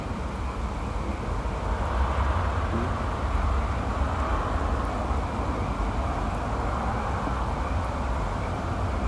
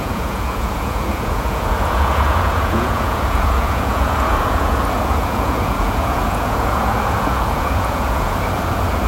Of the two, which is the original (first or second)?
first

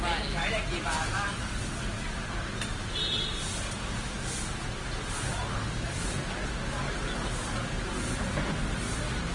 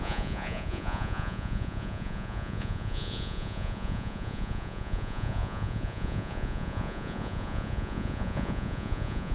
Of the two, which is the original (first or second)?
first